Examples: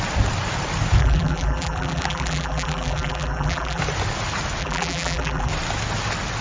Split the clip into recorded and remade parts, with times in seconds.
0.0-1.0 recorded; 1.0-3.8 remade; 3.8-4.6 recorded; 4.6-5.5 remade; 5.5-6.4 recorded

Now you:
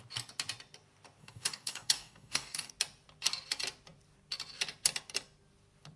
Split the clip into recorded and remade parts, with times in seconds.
0.0-1.2 recorded; 1.2-2.7 remade; 2.7-6.0 recorded

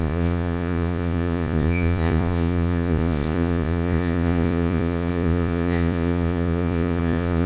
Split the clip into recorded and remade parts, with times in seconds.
0.0-7.5 remade

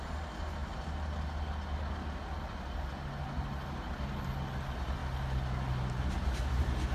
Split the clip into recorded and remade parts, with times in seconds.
0.0-6.9 recorded

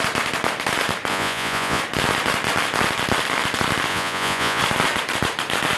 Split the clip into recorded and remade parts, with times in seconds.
0.0-1.1 recorded; 1.1-1.8 remade; 1.8-3.9 recorded; 3.9-4.6 remade; 4.6-5.8 recorded

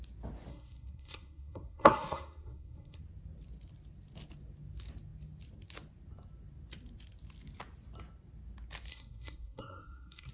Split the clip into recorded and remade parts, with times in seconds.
0.0-0.5 recorded; 0.5-3.0 remade; 3.0-8.9 recorded; 8.9-10.3 remade